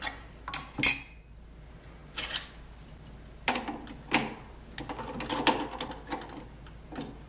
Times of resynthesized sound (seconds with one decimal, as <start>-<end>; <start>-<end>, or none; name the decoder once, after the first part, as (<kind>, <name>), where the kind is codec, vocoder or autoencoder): none